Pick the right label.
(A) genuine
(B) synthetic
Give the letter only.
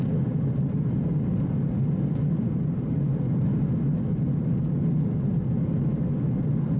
A